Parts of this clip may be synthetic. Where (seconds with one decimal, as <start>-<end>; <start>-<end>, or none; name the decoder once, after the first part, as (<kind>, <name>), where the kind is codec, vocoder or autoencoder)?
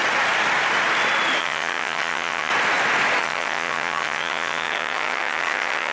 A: 1.4-2.5 (vocoder, HiFi-GAN); 3.2-5.9